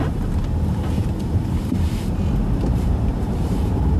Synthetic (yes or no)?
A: yes